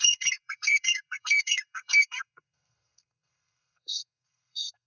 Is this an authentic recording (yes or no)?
no